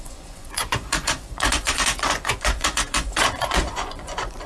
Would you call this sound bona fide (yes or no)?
no